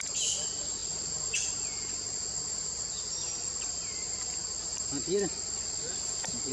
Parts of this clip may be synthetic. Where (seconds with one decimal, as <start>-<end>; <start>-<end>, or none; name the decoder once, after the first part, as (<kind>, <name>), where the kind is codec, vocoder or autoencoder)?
none

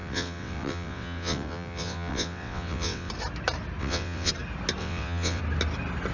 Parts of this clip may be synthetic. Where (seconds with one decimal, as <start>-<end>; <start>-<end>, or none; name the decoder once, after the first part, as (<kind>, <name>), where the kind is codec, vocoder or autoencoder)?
0.0-3.1 (vocoder, WaveNeXt); 3.8-4.3; 4.8-5.4

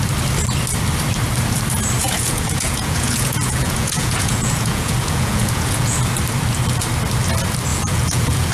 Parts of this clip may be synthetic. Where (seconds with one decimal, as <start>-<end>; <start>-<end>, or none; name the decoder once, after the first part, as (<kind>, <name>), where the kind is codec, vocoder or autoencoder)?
2.0-6.0 (vocoder, Vocos); 7.7-8.5

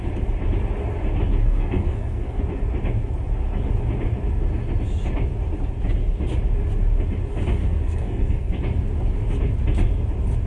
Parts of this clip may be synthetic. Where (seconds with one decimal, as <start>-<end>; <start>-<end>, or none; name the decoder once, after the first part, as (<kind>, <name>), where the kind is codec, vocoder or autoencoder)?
1.4-2.4 (codec, SNAC); 7.6-8.5

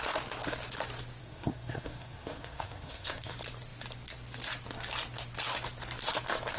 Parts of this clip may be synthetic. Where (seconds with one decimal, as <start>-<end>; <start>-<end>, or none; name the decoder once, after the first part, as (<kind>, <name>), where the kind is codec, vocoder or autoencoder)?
1.2-3.3 (codec, SNAC)